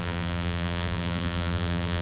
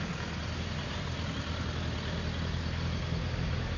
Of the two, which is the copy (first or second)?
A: first